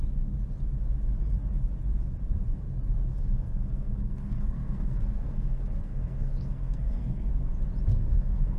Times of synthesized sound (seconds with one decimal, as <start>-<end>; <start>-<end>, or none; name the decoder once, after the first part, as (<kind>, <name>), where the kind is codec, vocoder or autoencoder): 3.1-7.5 (codec, SNAC); 7.9-8.6